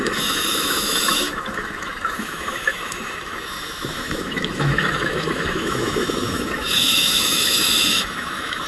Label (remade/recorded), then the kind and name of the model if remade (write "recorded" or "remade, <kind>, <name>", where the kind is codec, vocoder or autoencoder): remade, autoencoder, DAC-VAE